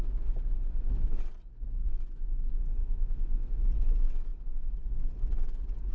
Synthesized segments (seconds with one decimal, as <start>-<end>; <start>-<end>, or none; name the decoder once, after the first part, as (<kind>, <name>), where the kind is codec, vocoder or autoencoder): 2.8-3.6 (codec, SNAC)